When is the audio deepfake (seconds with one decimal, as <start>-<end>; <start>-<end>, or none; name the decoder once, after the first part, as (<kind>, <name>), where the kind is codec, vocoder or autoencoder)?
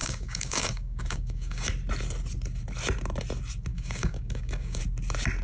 0.0-1.7 (codec, DAC); 3.7-4.8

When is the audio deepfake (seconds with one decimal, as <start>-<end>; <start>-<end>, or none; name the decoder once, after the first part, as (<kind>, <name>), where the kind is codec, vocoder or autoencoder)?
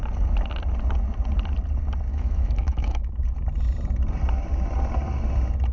2.1-3.1 (autoencoder, DAC-VAE)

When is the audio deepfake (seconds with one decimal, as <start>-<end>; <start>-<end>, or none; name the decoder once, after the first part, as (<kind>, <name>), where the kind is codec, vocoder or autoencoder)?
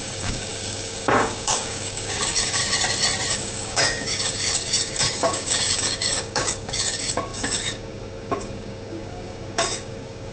0.0-2.6 (codec, DAC); 3.3-10.3